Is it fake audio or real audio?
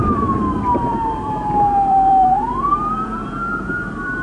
fake